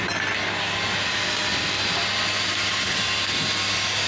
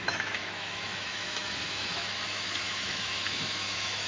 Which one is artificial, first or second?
second